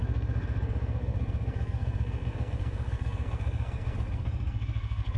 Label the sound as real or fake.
fake